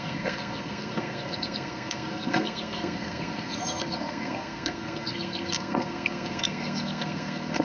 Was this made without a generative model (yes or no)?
no